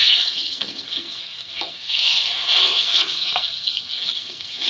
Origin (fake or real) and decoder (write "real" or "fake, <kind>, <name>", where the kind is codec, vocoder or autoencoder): fake, codec, SNAC